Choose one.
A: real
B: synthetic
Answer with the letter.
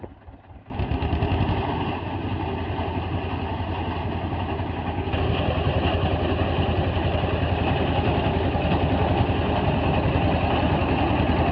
A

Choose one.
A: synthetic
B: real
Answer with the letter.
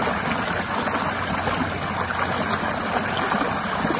B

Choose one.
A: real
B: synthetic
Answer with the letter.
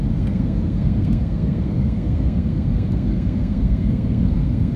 B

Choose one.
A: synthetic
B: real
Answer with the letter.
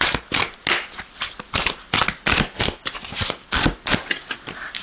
B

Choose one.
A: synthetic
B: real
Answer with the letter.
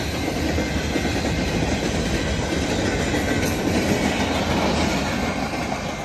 B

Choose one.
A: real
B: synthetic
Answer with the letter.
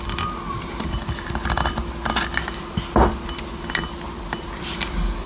A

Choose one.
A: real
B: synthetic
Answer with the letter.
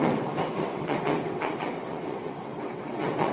B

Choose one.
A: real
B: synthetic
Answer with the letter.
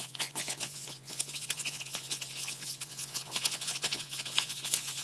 B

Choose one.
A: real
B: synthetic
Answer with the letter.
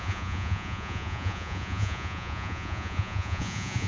B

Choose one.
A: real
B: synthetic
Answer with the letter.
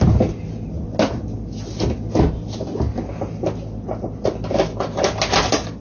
A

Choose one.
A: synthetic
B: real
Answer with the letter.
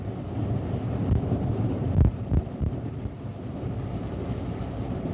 B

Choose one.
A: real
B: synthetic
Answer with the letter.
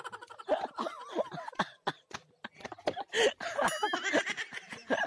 A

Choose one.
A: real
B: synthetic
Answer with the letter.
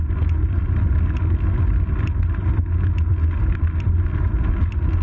A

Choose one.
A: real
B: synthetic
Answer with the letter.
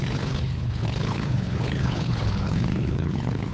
B